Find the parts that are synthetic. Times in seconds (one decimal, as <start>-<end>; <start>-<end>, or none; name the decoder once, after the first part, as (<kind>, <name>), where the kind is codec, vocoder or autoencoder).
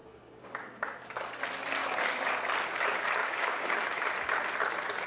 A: 0.0-1.4 (codec, DAC); 1.8-2.3; 3.2-4.1